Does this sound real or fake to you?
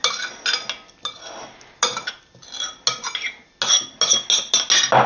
real